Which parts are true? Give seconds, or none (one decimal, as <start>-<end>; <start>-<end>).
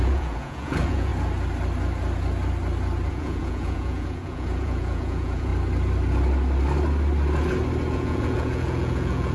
1.1-3.1; 5.5-7.9